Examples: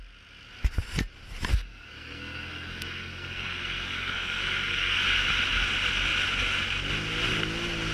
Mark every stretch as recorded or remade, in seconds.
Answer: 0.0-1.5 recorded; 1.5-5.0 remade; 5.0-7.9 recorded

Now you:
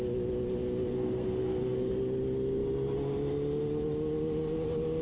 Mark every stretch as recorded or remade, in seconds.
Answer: 0.0-0.9 recorded; 0.9-1.9 remade; 1.9-5.0 recorded

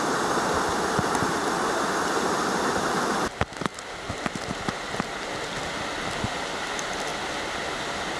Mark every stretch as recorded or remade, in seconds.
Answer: 0.0-8.2 recorded

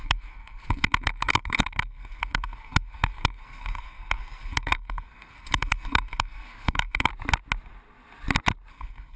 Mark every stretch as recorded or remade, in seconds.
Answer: 0.0-7.1 remade; 7.1-8.7 recorded; 8.7-9.2 remade

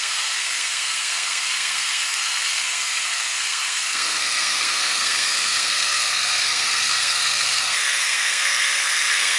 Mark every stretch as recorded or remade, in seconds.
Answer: 0.0-9.4 remade

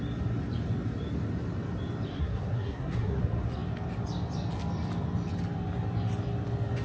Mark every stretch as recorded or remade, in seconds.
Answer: 0.0-2.1 recorded; 2.1-3.2 remade; 3.2-6.8 recorded